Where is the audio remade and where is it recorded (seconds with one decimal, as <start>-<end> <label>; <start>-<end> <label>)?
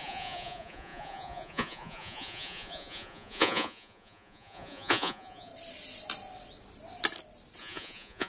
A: 0.0-5.5 remade; 5.5-7.6 recorded; 7.6-8.3 remade